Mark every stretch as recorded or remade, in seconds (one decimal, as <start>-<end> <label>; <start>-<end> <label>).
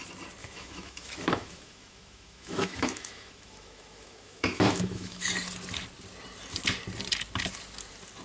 0.0-0.4 recorded; 0.4-5.3 remade; 5.3-8.2 recorded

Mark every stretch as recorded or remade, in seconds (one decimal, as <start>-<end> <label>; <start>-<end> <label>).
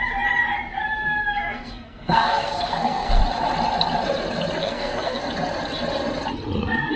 0.0-1.2 recorded; 1.2-3.2 remade; 3.2-4.6 recorded; 4.6-5.2 remade; 5.2-7.0 recorded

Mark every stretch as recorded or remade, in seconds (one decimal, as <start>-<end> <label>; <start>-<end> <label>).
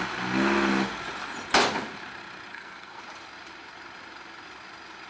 0.0-2.5 recorded; 2.5-3.0 remade; 3.0-5.1 recorded